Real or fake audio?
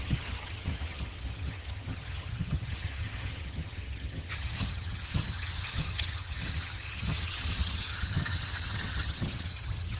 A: fake